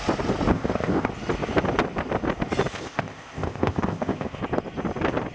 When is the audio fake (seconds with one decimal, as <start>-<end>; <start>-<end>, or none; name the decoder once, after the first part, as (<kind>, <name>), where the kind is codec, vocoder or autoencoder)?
0.5-1.1 (codec, ZipCodec); 2.7-4.4